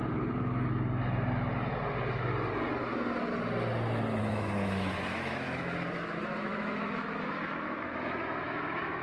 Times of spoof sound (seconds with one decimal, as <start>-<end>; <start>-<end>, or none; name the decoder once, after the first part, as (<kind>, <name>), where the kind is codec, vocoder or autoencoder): 4.2-9.0 (autoencoder, DAC-VAE)